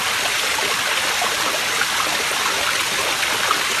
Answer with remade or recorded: recorded